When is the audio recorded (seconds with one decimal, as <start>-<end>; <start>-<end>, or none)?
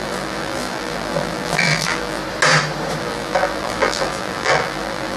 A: 2.2-3.0